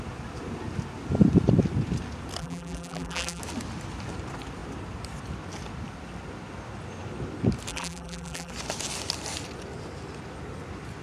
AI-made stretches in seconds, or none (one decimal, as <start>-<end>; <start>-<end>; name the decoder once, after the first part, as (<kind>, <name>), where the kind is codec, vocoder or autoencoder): 2.4-3.4 (vocoder, BigVGAN v2); 7.7-8.5